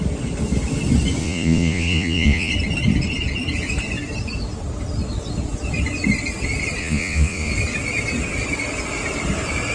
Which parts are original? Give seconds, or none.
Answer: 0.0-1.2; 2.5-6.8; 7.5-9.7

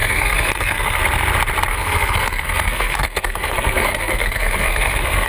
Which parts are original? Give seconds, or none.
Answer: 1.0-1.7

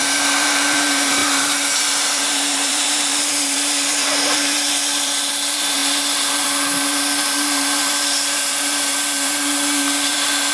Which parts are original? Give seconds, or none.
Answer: none